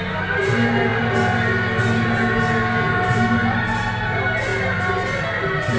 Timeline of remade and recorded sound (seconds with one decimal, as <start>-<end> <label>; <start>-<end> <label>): 0.0-5.8 recorded